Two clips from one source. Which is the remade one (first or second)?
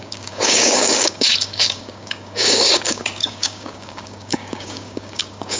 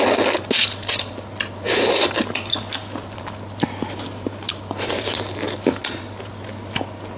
first